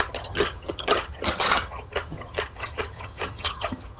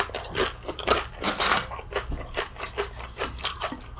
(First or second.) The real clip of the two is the second